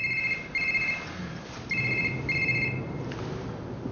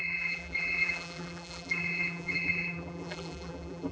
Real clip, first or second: first